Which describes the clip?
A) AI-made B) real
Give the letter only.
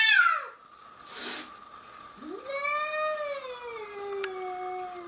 B